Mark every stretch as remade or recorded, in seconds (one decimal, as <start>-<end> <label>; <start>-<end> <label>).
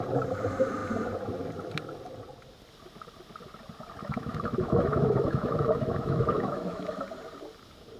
0.0-4.0 recorded; 4.0-7.0 remade; 7.0-8.0 recorded